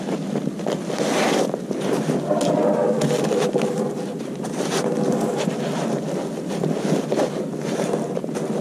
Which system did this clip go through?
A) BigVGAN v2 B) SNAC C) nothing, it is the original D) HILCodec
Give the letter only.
C